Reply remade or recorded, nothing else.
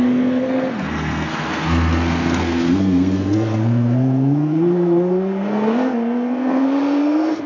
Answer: remade